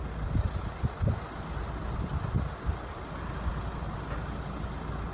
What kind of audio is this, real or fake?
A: real